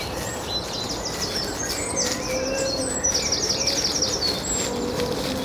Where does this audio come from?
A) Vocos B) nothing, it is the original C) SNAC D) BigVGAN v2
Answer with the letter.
B